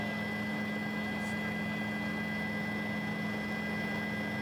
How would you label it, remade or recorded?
recorded